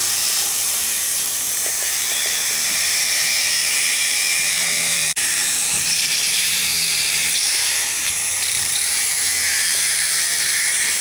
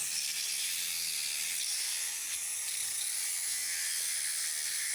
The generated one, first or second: first